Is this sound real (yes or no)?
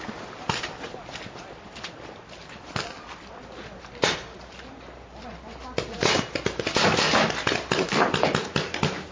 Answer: yes